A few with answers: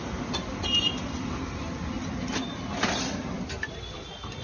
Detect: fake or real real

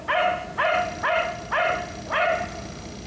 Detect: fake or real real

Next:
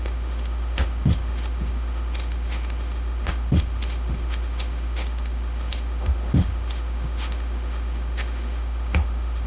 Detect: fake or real fake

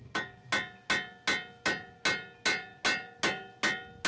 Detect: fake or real real